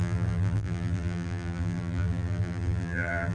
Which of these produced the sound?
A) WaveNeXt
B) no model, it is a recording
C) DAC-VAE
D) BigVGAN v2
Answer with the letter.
D